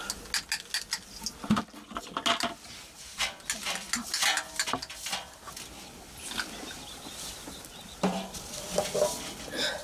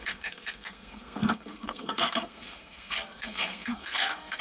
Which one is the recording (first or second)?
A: first